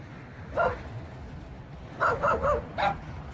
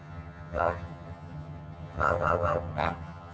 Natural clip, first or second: first